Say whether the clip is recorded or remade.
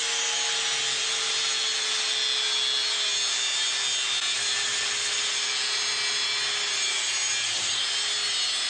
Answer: recorded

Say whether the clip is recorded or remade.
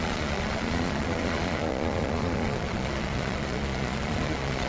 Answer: remade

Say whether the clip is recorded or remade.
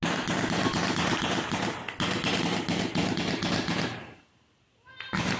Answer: recorded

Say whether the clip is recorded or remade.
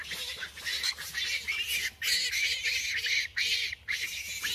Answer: recorded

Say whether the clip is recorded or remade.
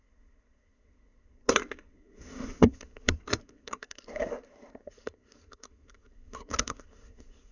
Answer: remade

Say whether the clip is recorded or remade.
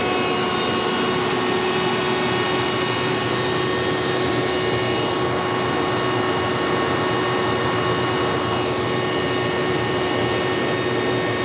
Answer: recorded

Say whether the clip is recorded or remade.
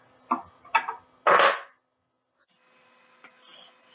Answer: recorded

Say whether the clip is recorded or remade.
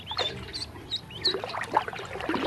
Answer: recorded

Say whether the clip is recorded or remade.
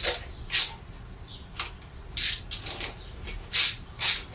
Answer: recorded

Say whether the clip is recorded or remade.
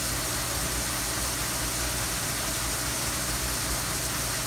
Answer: recorded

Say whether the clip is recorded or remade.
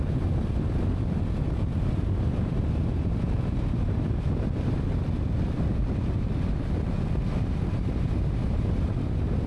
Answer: recorded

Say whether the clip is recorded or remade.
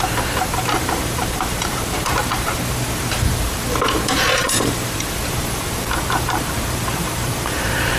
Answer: remade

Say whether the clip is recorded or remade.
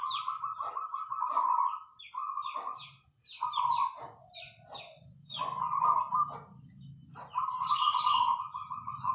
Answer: recorded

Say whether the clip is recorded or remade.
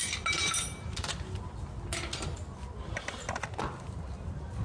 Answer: recorded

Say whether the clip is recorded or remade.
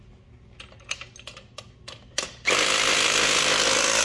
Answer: recorded